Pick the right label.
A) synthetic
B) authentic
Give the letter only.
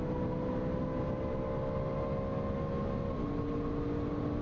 B